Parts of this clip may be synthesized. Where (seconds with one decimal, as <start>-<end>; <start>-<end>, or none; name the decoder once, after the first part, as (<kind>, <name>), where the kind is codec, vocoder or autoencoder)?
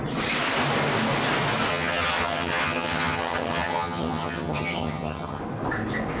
1.7-5.4 (vocoder, HiFi-GAN)